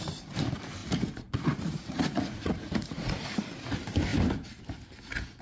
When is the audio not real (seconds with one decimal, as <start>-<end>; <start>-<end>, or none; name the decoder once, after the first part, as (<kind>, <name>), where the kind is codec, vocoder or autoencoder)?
0.8-3.4 (vocoder, Vocos)